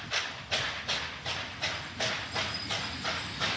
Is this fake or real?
real